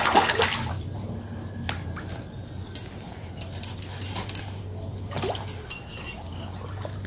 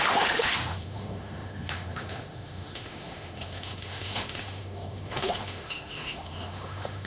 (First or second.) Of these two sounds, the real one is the first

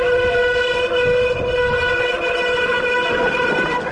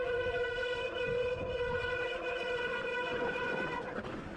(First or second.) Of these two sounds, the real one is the first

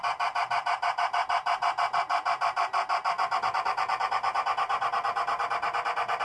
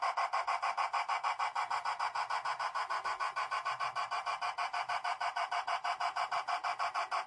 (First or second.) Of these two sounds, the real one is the first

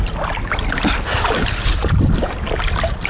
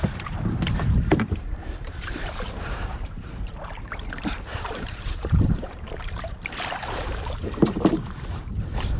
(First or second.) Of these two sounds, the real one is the first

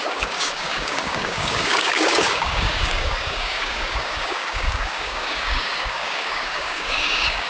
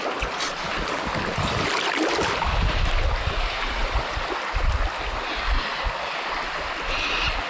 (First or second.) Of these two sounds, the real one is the second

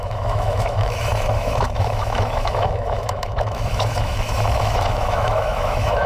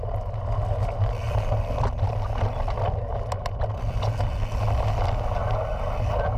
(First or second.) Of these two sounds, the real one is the second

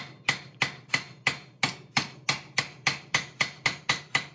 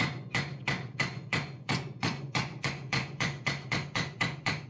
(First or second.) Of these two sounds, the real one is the first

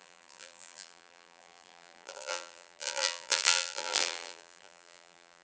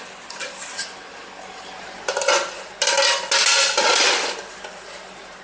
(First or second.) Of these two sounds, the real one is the second